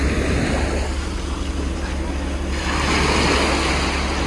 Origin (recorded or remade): recorded